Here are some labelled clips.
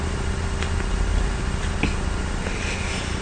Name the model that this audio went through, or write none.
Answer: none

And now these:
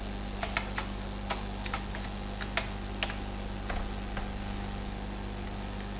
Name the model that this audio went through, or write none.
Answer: none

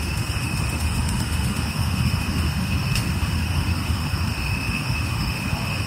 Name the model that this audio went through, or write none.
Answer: autoencoder, DAC-VAE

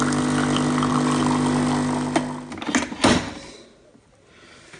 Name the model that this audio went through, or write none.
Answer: none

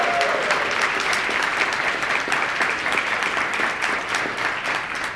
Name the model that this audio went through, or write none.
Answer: vocoder, BigVGAN v2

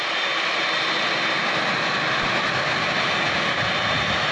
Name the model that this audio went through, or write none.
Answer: none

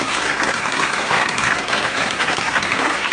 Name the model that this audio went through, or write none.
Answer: codec, SNAC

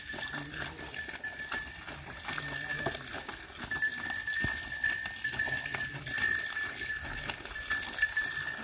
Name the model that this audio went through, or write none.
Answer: none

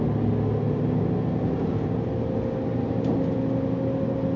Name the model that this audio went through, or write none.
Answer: none